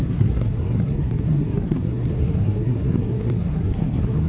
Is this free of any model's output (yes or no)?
no